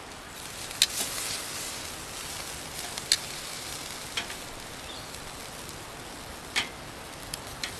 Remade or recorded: recorded